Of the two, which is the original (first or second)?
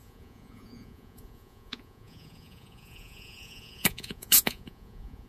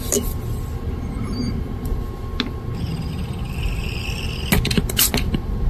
second